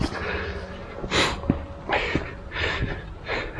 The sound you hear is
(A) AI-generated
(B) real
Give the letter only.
B